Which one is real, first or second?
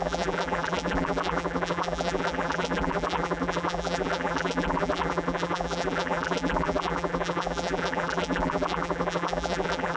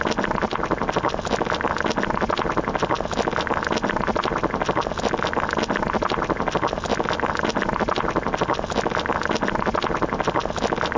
second